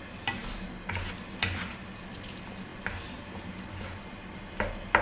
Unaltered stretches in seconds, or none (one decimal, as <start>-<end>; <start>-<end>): 0.0-5.0

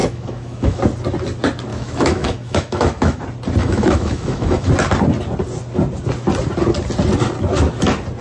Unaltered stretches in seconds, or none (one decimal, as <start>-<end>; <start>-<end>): 0.8-1.7; 3.2-3.6; 4.7-8.2

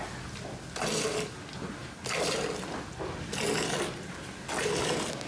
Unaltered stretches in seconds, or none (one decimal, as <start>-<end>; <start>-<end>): 0.0-5.3

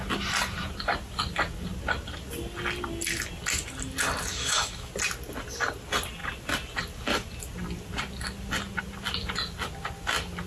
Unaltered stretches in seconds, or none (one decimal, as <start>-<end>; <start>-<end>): 0.0-4.3; 4.9-10.5

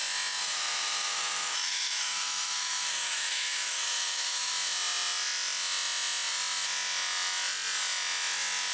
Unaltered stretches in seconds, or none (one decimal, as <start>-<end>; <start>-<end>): 0.0-0.4; 4.5-8.7

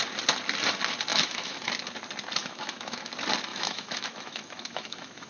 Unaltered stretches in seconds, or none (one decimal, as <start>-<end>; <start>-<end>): 0.0-1.1; 1.7-2.4; 3.1-3.5